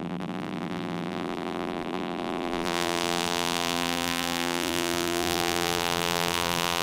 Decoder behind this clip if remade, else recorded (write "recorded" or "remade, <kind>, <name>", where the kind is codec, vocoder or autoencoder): remade, vocoder, BigVGAN v2